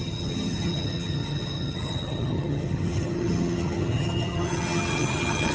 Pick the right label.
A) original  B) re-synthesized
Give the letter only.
B